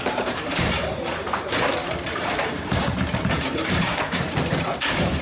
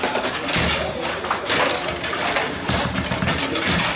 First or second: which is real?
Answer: second